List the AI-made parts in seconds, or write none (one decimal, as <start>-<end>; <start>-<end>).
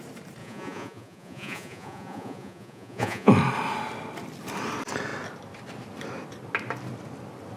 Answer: 0.4-3.3